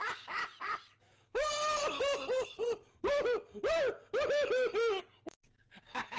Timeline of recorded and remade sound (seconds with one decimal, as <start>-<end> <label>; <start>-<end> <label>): 0.0-0.4 remade; 0.4-1.0 recorded; 1.0-1.6 remade; 1.6-5.0 recorded; 5.0-6.2 remade